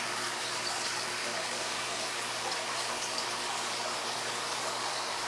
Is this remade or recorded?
remade